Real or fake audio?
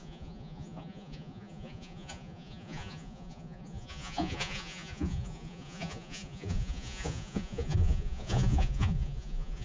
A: fake